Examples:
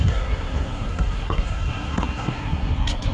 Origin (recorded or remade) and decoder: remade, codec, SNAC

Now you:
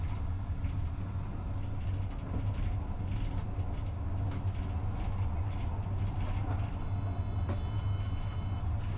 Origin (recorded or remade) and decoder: recorded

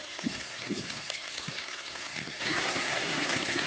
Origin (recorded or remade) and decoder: remade, codec, SNAC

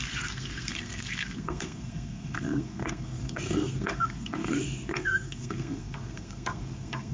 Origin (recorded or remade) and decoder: remade, codec, SNAC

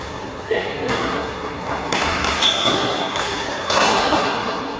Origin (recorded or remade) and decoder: remade, codec, SNAC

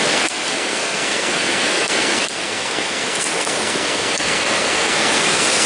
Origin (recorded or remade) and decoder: remade, codec, SNAC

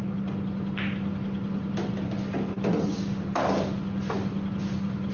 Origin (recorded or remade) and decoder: recorded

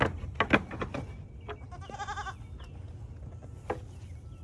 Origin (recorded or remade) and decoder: recorded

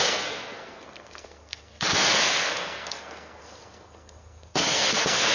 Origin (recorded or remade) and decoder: remade, codec, SNAC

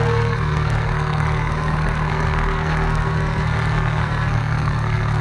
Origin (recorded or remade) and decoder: remade, codec, SNAC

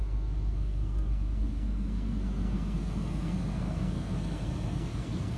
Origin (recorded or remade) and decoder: remade, codec, SNAC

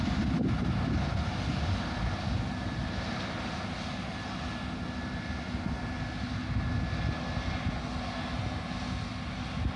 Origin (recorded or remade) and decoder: recorded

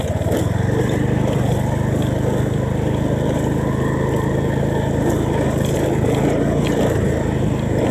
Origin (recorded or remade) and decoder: recorded